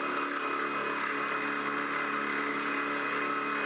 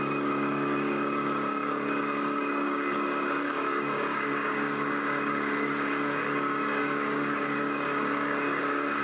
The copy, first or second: second